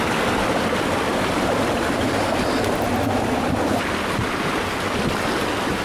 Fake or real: real